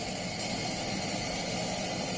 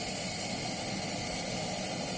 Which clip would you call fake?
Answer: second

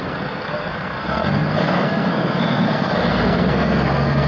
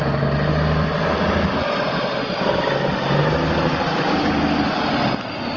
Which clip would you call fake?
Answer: first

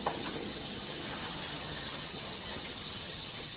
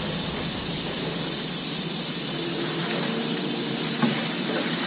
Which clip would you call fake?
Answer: first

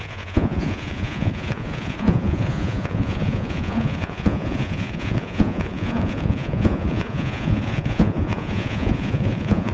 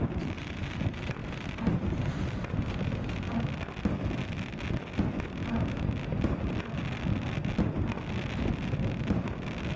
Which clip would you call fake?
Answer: first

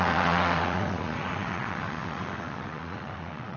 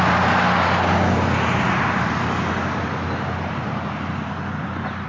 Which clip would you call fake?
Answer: first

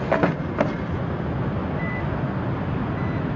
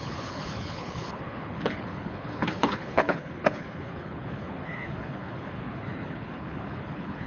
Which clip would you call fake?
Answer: second